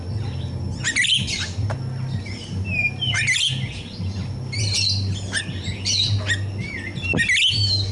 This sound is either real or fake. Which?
real